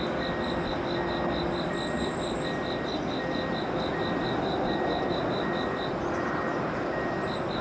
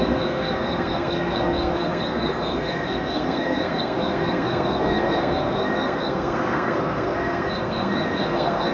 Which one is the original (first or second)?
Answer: first